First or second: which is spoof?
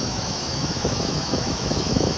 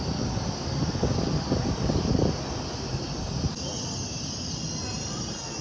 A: first